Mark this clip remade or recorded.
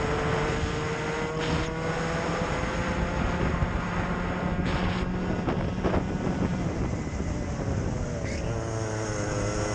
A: recorded